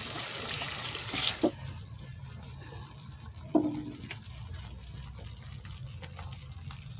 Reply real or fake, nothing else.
real